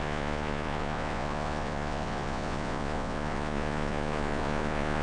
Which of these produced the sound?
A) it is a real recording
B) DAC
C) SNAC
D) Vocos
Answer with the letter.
D